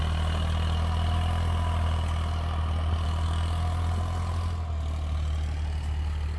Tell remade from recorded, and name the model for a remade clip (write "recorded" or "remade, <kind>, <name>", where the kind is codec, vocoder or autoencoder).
recorded